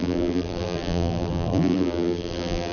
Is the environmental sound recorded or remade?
remade